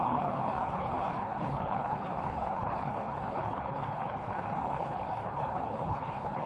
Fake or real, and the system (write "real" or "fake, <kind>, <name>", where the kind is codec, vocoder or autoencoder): fake, codec, HILCodec